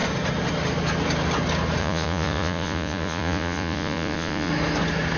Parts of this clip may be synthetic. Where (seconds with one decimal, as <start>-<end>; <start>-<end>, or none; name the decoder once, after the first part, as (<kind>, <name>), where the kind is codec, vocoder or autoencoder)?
1.8-4.5 (vocoder, Vocos)